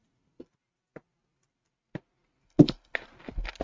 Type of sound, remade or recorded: recorded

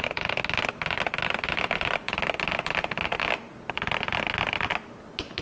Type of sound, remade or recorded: recorded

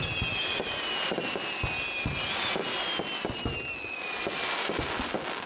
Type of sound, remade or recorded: recorded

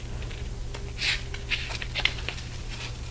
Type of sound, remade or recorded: recorded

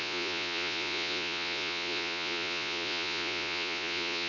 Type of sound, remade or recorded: remade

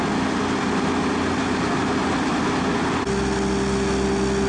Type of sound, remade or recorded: recorded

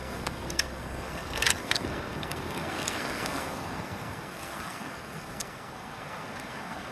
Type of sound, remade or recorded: remade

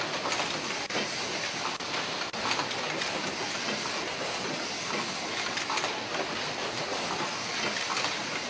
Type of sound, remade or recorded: recorded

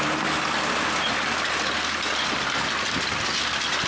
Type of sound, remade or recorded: recorded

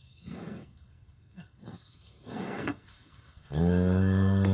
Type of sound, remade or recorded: remade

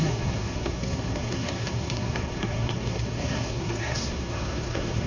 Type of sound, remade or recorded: remade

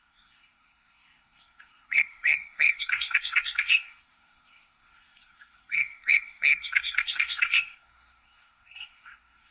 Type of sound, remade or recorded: remade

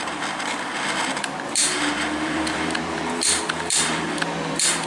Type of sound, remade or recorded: remade